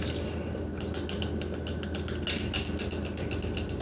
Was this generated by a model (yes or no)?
no